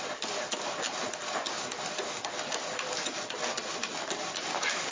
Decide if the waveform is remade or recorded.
recorded